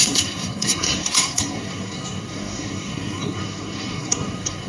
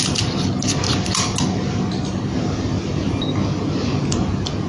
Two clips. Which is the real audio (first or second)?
second